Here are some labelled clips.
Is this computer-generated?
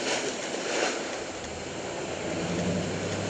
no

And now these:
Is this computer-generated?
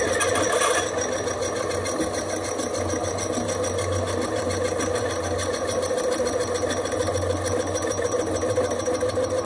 no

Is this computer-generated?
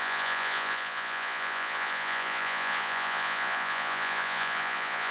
yes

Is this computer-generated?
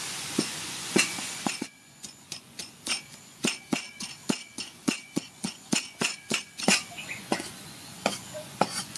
yes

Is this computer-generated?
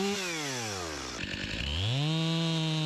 no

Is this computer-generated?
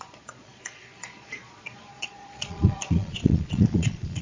yes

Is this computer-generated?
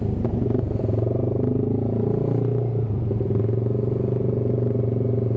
no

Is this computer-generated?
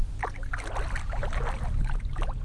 no